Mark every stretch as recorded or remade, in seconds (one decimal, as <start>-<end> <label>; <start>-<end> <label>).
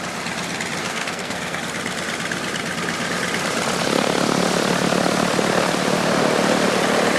0.0-0.8 recorded; 0.8-1.6 remade; 1.6-7.2 recorded